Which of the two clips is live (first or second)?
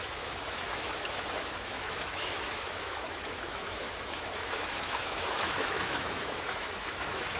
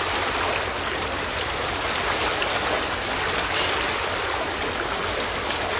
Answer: second